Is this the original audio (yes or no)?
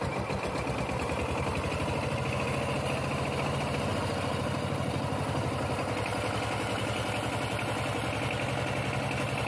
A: yes